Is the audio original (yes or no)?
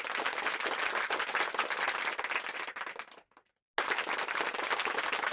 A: yes